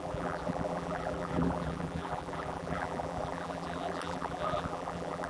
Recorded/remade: remade